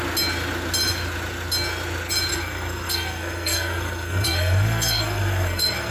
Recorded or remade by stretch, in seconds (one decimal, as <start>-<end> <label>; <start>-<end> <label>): 0.0-2.3 recorded; 2.3-5.9 remade